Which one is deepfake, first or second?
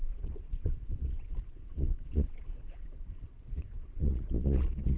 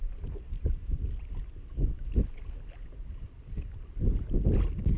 first